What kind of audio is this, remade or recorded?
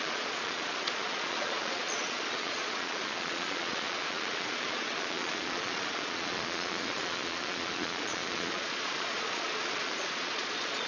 remade